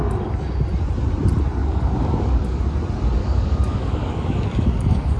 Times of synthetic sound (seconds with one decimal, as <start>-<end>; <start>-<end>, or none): 1.6-2.6; 3.2-5.2